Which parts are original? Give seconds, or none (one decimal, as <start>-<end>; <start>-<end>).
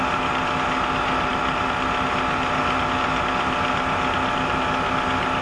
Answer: 0.0-5.4